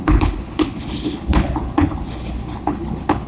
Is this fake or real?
fake